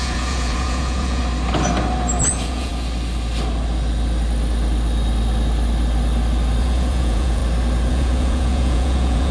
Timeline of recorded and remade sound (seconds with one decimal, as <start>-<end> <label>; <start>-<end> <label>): 0.0-1.2 remade; 1.2-2.3 recorded; 2.3-2.7 remade; 2.7-6.6 recorded; 6.6-7.4 remade; 7.4-7.9 recorded; 7.9-9.3 remade